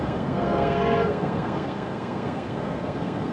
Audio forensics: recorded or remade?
remade